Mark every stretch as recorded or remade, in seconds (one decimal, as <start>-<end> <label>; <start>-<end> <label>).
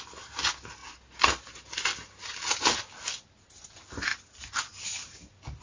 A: 0.0-5.6 recorded